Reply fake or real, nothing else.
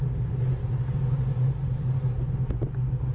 real